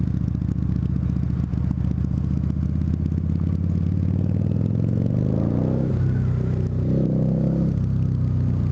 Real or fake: real